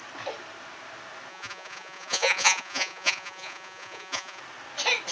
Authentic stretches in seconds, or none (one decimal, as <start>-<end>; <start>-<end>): 0.0-1.3; 4.4-5.1